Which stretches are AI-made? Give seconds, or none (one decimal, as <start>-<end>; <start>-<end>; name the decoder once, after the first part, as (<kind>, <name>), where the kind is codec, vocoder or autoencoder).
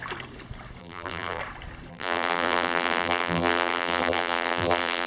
0.8-1.4 (vocoder, BigVGAN v2); 1.9-5.1